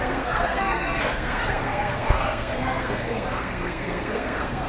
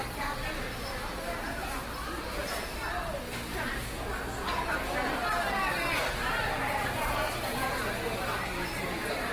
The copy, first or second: first